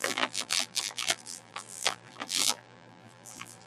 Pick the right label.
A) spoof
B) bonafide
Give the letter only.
A